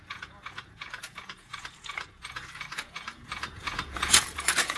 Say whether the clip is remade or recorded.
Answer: remade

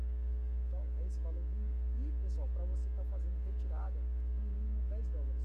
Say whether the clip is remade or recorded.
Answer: remade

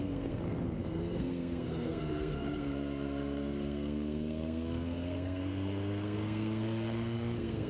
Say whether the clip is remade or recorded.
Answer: remade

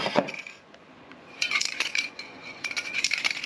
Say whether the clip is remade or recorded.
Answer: remade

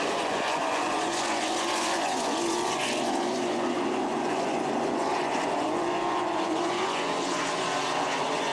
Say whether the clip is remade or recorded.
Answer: remade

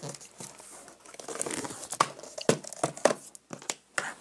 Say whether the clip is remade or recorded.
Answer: recorded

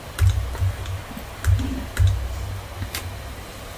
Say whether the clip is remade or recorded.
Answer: recorded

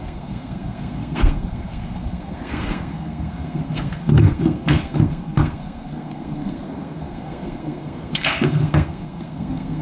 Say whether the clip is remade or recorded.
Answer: remade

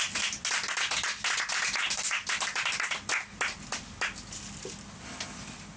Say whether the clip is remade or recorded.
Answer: recorded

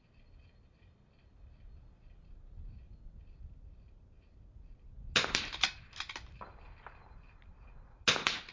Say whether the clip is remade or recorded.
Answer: recorded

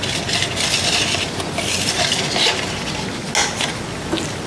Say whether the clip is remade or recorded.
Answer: recorded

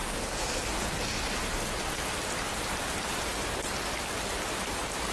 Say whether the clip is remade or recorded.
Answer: recorded